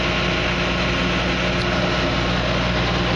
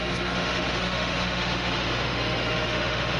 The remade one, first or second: second